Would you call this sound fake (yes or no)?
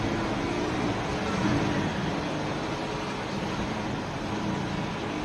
no